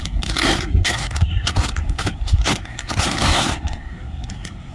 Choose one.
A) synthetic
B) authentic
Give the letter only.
A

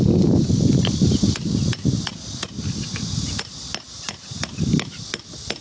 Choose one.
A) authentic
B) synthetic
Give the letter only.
A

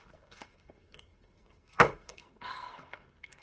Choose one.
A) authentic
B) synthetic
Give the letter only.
B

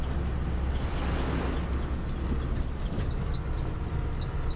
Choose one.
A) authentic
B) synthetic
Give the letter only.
A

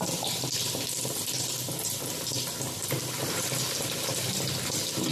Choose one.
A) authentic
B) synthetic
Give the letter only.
A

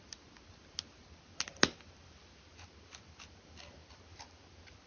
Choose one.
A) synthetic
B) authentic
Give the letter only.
B